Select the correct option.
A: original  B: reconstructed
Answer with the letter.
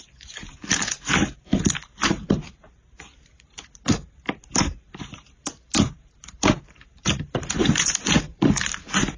B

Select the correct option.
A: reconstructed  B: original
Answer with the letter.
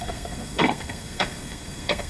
A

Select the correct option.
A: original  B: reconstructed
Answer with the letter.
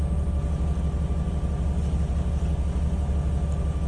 A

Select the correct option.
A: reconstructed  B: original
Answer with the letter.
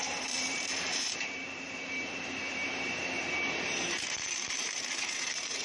A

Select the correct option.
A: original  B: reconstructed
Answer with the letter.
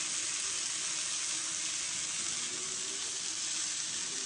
A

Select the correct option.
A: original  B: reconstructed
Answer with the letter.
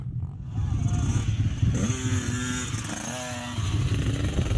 A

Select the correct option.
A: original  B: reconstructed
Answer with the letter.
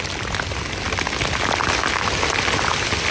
A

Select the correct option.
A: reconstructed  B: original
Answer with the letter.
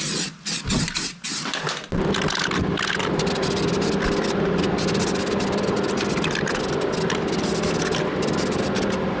B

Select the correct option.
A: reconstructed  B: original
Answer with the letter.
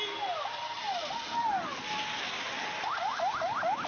B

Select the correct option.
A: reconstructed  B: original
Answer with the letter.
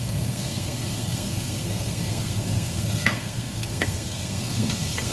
A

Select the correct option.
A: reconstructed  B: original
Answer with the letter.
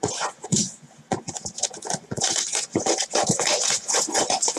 A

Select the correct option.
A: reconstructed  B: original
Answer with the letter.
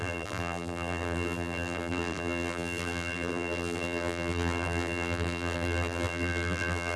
A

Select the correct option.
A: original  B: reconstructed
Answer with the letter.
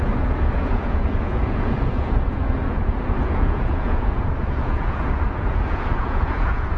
B